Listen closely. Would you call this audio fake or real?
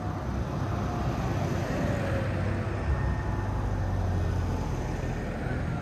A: real